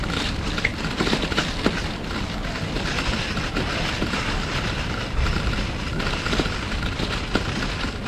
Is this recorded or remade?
recorded